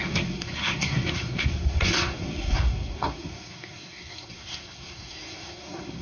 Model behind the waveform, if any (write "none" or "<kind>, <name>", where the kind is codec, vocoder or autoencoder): codec, SNAC